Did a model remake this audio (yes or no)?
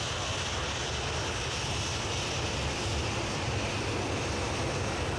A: no